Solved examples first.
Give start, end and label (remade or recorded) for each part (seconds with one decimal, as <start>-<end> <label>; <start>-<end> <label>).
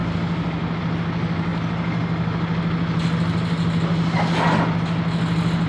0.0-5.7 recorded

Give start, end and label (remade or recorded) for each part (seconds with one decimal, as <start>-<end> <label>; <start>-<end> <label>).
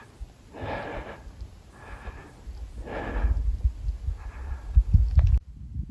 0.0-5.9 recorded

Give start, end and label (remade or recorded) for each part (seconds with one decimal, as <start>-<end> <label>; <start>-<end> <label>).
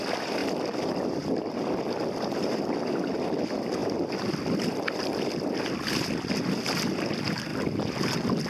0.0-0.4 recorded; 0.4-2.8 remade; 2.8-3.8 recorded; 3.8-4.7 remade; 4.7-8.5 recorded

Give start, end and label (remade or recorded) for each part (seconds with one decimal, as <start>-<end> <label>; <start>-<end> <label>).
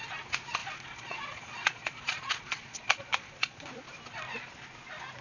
0.0-0.6 recorded; 0.6-3.7 remade; 3.7-5.2 recorded